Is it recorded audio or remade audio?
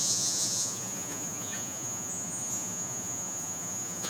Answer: remade